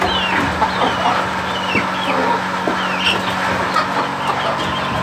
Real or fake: real